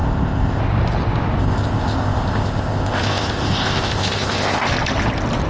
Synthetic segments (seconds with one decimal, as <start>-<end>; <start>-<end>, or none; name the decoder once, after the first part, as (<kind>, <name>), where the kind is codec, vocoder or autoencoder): 0.0-0.6 (codec, ZipCodec); 1.4-4.7